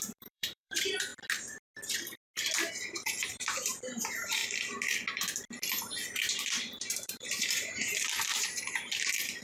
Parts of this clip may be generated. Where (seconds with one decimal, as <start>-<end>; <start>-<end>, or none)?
0.0-1.1; 2.7-4.4; 6.3-9.4